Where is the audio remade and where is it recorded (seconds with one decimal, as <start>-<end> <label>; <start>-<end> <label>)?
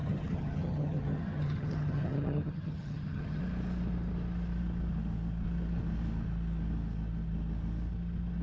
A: 0.0-3.4 remade; 3.4-8.4 recorded